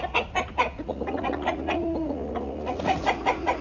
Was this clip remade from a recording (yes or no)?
yes